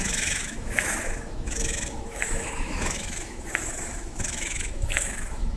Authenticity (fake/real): fake